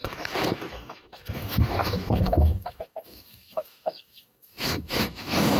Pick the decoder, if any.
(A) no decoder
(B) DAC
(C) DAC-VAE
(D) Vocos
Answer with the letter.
B